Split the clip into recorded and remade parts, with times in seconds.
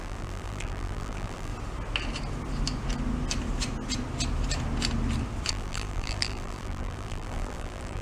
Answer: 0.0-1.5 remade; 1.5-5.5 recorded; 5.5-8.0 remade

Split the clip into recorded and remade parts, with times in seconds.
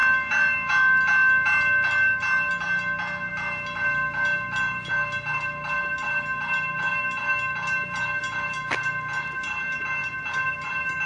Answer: 0.0-11.1 recorded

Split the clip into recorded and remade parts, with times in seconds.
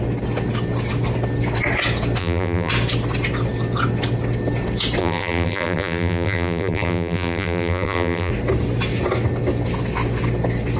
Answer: 0.0-2.2 recorded; 2.2-2.7 remade; 2.7-5.0 recorded; 5.0-8.3 remade; 8.3-10.8 recorded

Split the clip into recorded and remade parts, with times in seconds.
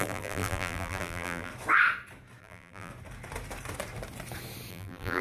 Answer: 0.0-1.5 remade; 1.5-2.4 recorded; 2.4-2.9 remade; 2.9-4.7 recorded; 4.7-5.2 remade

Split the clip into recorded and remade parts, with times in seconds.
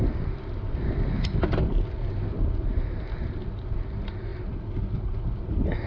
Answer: 0.0-5.9 recorded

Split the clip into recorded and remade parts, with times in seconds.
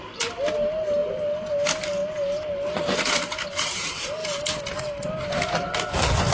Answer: 0.0-6.3 recorded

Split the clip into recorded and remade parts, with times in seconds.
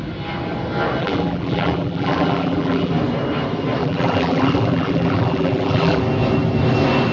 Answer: 0.0-1.0 recorded; 1.0-2.9 remade; 2.9-3.8 recorded; 3.8-6.0 remade; 6.0-7.1 recorded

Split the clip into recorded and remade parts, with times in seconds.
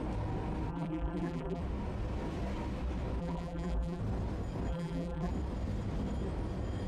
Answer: 0.0-0.7 recorded; 0.7-1.6 remade; 1.6-3.2 recorded; 3.2-4.0 remade; 4.0-4.7 recorded; 4.7-5.3 remade; 5.3-6.9 recorded